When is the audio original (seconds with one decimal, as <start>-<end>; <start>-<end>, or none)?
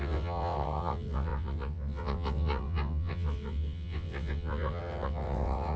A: none